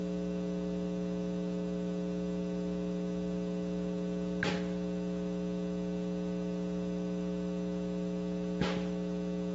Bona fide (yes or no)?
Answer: yes